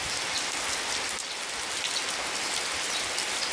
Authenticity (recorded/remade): recorded